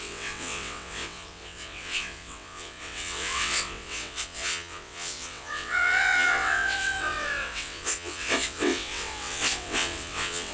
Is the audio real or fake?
fake